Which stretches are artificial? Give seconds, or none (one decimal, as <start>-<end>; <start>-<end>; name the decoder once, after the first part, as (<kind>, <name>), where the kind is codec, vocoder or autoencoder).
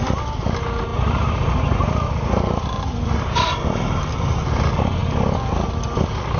0.9-4.0 (vocoder, BigVGAN v2)